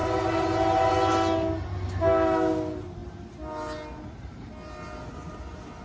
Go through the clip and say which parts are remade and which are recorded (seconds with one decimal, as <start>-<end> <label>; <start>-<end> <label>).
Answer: 0.0-5.8 recorded